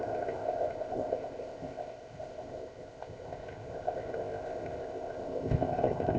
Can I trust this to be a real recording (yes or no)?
no